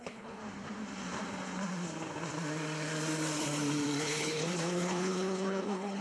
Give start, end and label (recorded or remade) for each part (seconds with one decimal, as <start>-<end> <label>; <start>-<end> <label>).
0.0-0.4 remade; 0.4-4.0 recorded; 4.0-6.0 remade